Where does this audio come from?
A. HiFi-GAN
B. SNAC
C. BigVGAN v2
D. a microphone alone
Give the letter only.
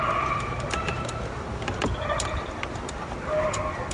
C